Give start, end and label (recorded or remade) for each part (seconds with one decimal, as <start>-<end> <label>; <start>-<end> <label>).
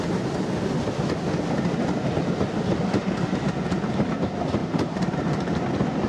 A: 0.0-4.6 recorded; 4.6-5.6 remade; 5.6-6.1 recorded